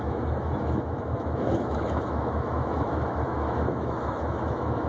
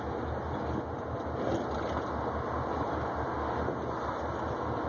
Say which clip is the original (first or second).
second